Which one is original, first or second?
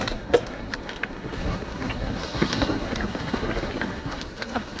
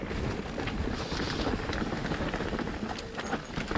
second